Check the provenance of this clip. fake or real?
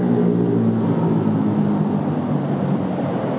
real